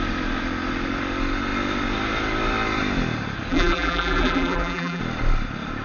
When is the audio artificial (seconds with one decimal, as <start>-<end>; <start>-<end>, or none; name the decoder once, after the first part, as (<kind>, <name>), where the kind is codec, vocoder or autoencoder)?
3.5-5.0 (vocoder, BigVGAN v2)